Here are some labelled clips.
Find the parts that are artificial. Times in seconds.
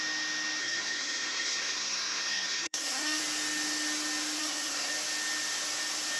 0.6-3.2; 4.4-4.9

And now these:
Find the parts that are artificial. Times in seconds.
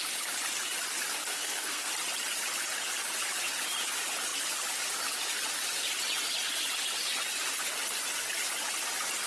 1.3-1.9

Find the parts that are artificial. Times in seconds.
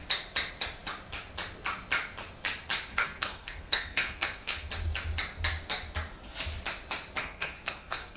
2.9-4.7; 7.2-8.2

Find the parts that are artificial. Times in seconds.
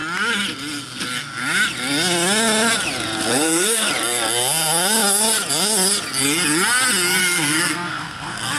3.3-3.9; 7.2-8.6